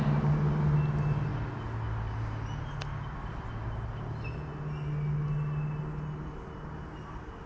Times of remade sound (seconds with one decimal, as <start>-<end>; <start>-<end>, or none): none